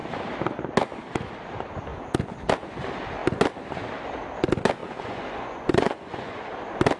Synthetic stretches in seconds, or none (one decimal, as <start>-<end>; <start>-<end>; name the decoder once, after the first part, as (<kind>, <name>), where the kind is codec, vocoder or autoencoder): 4.8-6.5 (vocoder, Vocos)